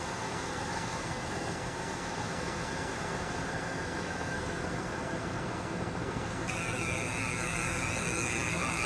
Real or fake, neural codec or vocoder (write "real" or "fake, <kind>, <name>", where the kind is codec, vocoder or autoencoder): fake, codec, SNAC